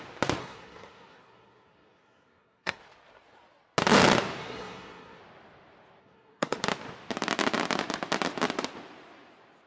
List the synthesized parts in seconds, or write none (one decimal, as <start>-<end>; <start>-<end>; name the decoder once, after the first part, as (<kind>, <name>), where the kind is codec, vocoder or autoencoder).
0.4-2.8 (codec, SNAC); 4.4-5.2; 6.0-6.6